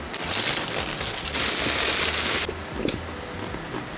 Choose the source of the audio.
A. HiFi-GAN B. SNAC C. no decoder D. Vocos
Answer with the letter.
C